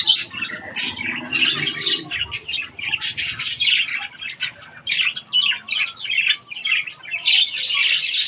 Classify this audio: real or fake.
real